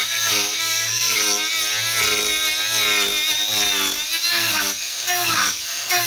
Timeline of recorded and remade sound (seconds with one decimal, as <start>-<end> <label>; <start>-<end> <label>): 0.0-1.2 remade; 1.2-4.3 recorded; 4.3-6.1 remade